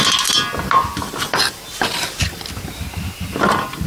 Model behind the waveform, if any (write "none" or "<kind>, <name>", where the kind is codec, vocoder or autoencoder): none